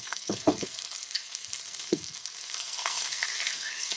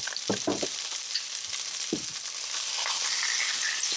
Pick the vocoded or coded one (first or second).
first